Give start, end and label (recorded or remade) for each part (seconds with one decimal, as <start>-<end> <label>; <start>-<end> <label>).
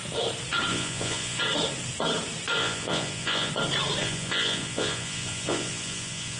0.0-0.7 recorded; 0.7-1.4 remade; 1.4-2.6 recorded; 2.6-3.5 remade; 3.5-4.0 recorded; 4.0-6.4 remade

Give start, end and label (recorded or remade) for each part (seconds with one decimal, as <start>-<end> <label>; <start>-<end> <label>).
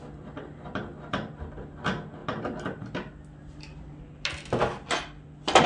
0.0-5.7 recorded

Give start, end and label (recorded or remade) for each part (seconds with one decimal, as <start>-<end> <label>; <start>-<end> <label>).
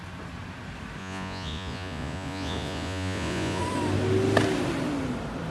0.0-1.0 recorded; 1.0-3.6 remade; 3.6-5.5 recorded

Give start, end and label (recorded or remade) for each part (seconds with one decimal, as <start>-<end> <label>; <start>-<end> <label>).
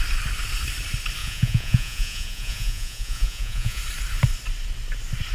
0.0-1.2 recorded; 1.2-3.8 remade; 3.8-5.3 recorded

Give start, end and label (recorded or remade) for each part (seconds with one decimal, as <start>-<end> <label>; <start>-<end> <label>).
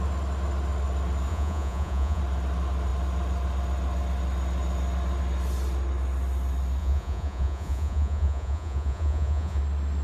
0.0-1.3 recorded; 1.3-2.2 remade; 2.2-6.8 recorded; 6.8-9.6 remade; 9.6-10.0 recorded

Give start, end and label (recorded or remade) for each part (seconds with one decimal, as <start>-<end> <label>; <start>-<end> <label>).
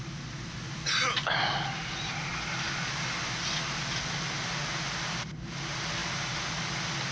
0.0-7.1 recorded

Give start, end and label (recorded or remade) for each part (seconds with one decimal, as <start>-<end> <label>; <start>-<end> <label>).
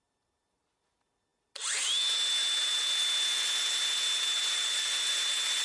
0.0-5.6 recorded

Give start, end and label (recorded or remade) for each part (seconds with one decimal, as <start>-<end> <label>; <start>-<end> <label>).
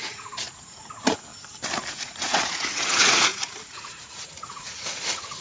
0.0-1.3 remade; 1.3-1.9 recorded; 1.9-5.4 remade